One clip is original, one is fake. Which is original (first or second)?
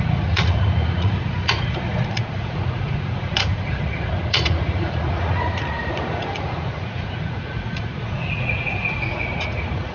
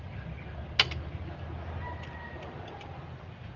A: second